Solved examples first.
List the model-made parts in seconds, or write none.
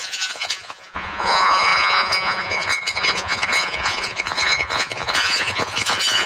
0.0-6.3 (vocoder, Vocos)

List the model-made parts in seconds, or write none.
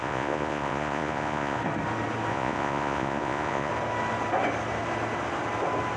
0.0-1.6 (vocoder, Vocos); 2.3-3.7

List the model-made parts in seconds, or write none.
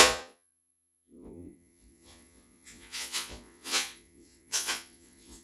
0.0-5.4 (vocoder, Vocos)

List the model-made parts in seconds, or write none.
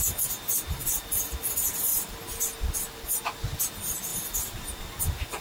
none